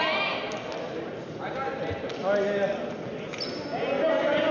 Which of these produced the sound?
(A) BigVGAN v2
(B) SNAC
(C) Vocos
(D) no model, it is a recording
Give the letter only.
D